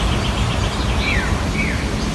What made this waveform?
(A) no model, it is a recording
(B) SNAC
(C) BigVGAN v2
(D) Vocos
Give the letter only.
A